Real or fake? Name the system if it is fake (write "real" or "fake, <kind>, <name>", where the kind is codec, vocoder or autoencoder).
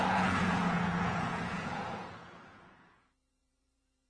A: fake, vocoder, Vocos